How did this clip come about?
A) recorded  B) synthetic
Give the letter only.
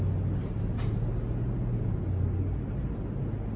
A